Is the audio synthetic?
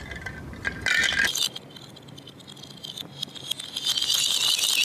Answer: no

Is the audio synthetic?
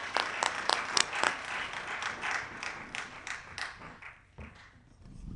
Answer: yes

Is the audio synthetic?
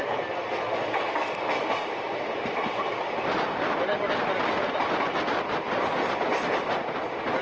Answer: no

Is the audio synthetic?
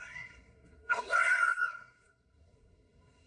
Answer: yes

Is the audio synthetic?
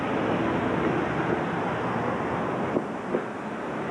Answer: no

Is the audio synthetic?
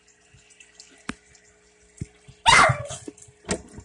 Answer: no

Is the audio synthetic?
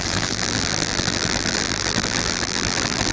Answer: yes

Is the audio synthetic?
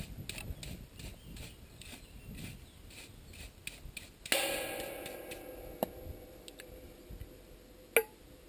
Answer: no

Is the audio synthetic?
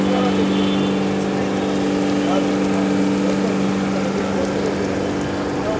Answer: no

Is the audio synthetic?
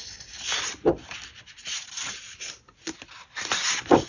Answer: no